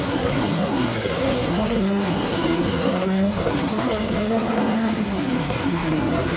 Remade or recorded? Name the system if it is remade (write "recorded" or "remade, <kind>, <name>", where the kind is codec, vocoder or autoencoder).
remade, codec, SNAC